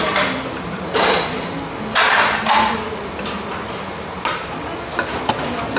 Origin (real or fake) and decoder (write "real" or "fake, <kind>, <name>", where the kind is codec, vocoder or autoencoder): real